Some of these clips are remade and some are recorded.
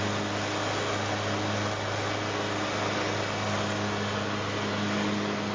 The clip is recorded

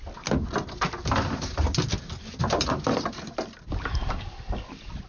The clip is recorded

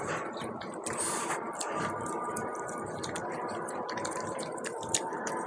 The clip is remade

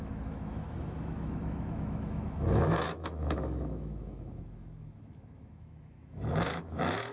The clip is remade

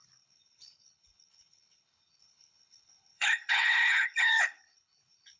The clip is remade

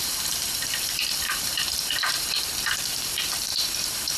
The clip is remade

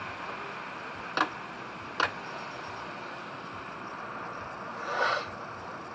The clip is recorded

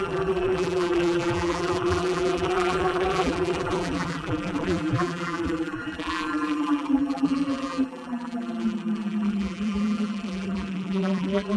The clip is remade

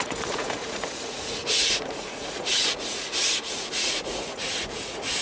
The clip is remade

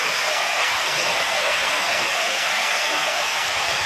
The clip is remade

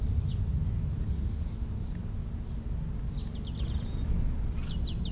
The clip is recorded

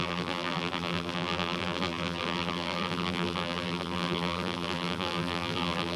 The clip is remade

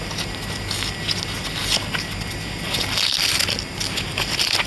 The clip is recorded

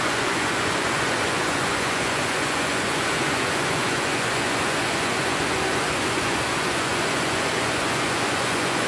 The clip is remade